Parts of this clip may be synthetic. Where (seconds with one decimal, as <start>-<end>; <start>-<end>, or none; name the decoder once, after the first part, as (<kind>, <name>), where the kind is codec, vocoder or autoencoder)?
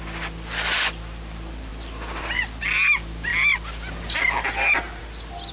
none